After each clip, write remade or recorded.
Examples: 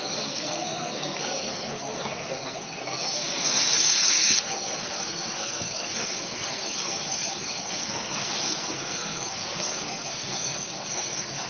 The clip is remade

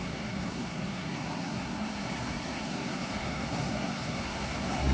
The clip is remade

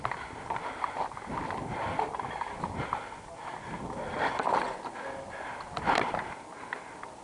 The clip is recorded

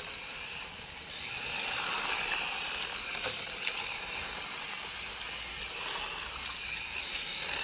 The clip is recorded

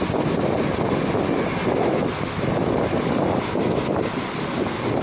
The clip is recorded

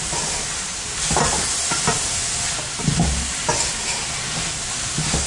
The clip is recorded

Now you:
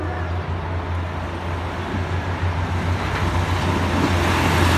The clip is recorded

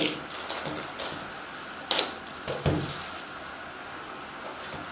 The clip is recorded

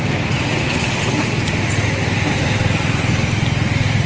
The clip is recorded